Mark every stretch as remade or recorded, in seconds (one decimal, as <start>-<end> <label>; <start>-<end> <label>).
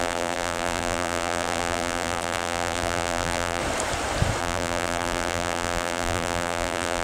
0.0-3.6 remade; 3.6-4.4 recorded; 4.4-7.0 remade